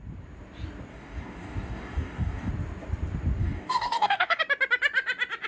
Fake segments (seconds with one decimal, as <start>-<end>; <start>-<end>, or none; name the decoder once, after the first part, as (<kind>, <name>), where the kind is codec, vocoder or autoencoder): 0.9-2.5 (codec, DAC); 3.4-4.4